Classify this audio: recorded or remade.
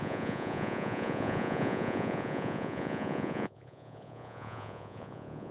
remade